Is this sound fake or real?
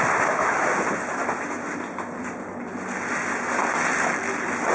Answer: real